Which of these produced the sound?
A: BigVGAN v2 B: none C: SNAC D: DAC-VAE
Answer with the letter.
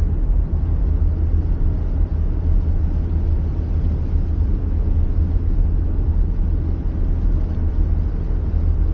B